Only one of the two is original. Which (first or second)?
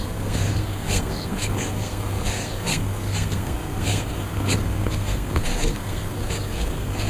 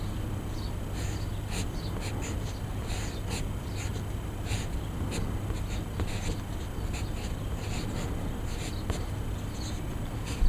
second